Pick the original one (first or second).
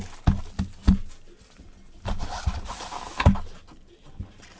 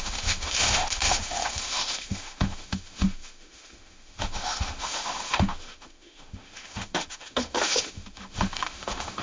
first